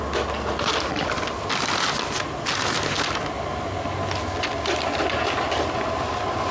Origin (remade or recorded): recorded